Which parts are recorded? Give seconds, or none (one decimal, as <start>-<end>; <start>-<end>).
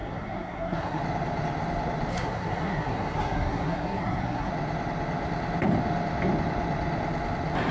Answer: 1.0-2.1; 4.5-7.7